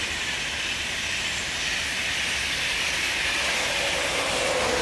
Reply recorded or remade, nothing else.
recorded